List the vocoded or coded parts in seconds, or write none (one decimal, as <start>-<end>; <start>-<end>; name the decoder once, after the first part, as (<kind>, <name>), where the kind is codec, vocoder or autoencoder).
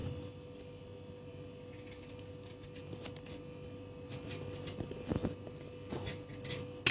0.0-0.8 (vocoder, BigVGAN v2)